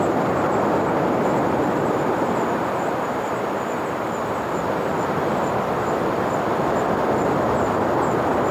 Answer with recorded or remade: recorded